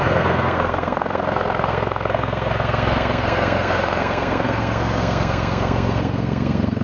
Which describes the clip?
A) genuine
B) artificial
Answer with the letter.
B